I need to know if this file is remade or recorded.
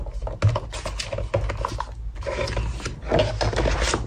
recorded